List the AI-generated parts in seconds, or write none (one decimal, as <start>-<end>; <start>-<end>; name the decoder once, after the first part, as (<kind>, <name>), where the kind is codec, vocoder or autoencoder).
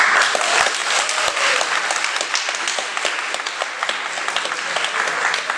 none